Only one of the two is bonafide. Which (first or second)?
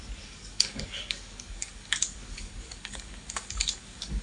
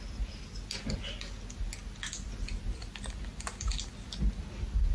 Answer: second